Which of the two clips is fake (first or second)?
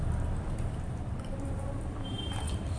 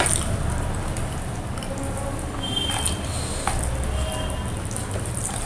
first